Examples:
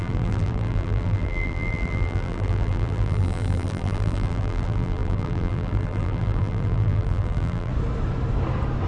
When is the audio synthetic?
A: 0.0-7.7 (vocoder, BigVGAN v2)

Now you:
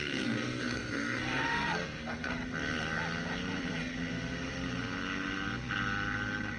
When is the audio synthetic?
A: 0.0-2.3 (codec, SNAC)

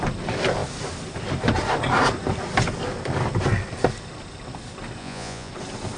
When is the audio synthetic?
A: 5.0-5.5 (vocoder, Vocos)

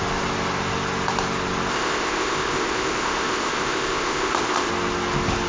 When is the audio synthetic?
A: 1.7-4.7 (codec, ZipCodec)

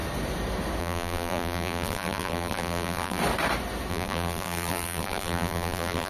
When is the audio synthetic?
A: 0.8-3.2 (vocoder, BigVGAN v2); 3.9-6.1

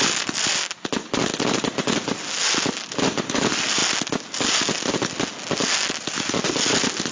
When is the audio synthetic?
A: none

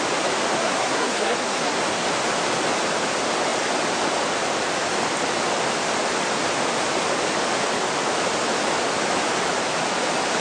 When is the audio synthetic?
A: 0.6-1.8 (codec, SNAC)

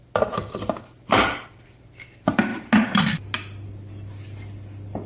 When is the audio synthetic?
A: none